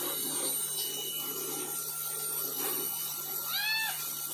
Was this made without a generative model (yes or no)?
yes